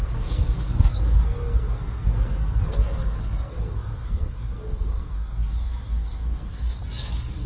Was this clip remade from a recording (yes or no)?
yes